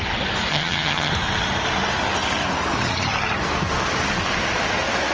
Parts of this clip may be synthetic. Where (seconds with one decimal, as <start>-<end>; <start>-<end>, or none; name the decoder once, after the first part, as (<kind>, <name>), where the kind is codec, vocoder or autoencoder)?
0.5-1.1 (vocoder, HiFi-GAN)